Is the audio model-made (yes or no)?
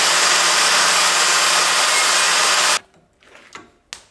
no